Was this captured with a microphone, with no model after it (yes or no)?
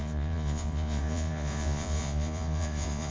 no